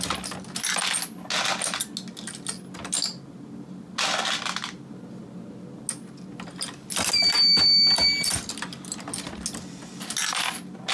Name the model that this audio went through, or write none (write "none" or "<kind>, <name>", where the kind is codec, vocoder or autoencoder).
none